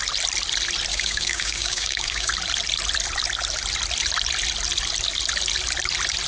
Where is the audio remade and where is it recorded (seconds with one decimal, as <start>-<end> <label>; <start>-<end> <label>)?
0.0-0.9 recorded; 0.9-2.3 remade; 2.3-6.3 recorded